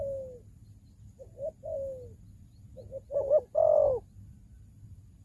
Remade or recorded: recorded